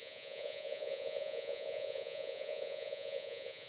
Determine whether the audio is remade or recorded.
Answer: remade